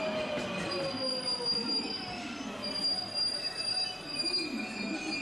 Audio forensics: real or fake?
real